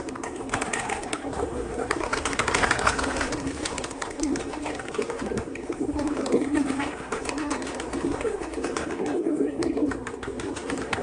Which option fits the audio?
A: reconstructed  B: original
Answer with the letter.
A